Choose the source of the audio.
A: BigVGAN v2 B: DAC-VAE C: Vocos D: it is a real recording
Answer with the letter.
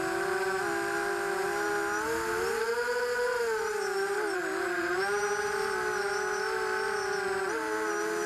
D